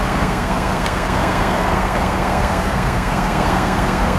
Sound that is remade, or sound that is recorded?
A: remade